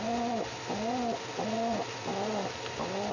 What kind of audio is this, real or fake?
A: real